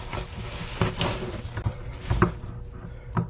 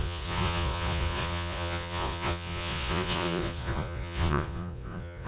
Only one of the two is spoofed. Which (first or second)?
second